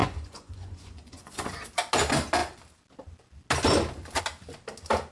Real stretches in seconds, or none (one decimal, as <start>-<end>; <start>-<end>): 1.5-5.1